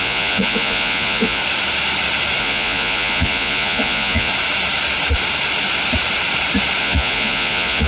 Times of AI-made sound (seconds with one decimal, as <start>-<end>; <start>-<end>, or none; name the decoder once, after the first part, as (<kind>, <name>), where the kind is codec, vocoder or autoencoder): 0.0-1.4 (vocoder, Vocos); 2.4-4.3; 6.8-7.9